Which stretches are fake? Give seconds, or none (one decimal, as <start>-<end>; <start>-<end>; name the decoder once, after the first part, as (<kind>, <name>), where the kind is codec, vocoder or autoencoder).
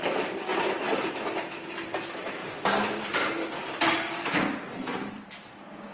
2.4-5.1 (vocoder, BigVGAN v2)